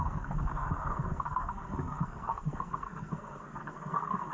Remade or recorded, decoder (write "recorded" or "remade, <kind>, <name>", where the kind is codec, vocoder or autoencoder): remade, codec, SNAC